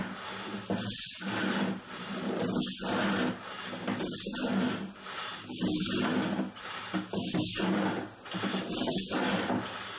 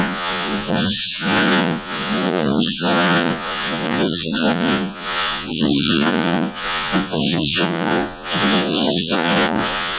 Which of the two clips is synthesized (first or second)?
second